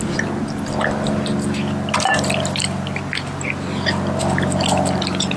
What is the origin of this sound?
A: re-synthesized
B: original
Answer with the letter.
B